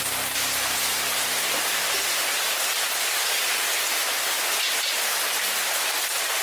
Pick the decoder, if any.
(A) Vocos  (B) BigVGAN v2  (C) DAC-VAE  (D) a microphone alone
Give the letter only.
D